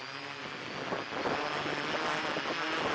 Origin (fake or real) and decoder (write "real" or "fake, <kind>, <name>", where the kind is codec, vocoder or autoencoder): real